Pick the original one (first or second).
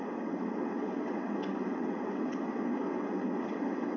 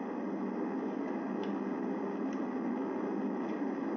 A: second